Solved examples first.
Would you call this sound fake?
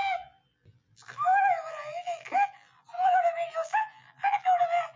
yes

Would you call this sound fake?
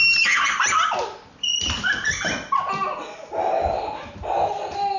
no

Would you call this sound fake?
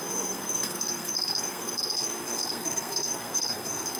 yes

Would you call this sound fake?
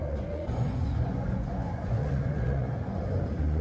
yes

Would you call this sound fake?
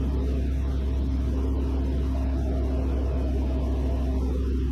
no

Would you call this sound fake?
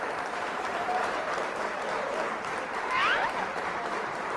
yes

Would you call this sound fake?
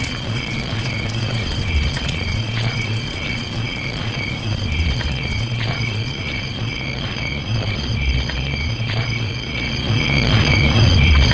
yes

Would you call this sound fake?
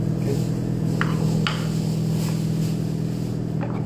no